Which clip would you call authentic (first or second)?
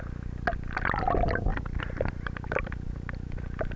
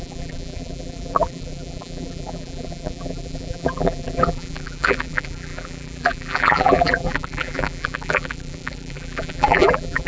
first